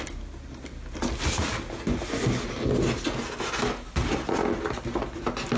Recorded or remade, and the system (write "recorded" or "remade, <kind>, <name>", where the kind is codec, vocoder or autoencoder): recorded